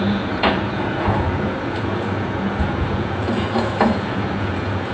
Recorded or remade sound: remade